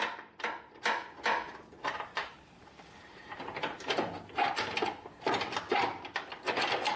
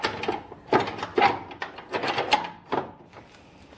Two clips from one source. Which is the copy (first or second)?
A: first